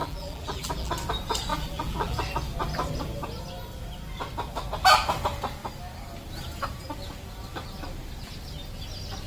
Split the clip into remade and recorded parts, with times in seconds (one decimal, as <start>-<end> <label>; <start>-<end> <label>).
0.0-0.9 remade; 0.9-1.5 recorded; 1.5-2.2 remade; 2.2-9.3 recorded